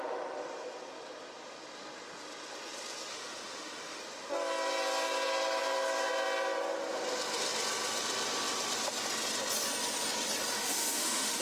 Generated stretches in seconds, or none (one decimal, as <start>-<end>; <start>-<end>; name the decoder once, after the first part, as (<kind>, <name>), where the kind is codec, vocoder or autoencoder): 3.1-4.0 (autoencoder, DAC-VAE); 10.5-11.4